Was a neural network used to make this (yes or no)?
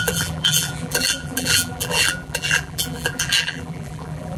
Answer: yes